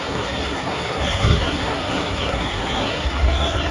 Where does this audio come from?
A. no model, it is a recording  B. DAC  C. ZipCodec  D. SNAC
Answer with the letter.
D